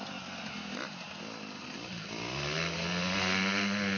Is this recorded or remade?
recorded